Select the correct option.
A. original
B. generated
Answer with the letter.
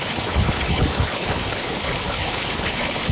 B